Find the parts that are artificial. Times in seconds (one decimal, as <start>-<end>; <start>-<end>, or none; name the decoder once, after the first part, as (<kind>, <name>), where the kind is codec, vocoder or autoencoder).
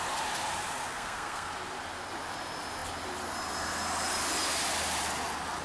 0.9-1.5 (codec, SNAC)